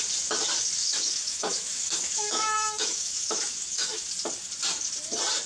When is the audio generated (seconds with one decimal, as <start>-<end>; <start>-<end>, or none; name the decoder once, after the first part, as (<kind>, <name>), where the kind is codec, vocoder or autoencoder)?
0.8-4.1 (autoencoder, DAC-VAE)

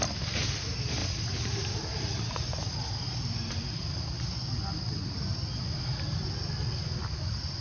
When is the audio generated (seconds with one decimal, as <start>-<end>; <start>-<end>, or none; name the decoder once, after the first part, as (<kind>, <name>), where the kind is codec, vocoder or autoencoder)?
none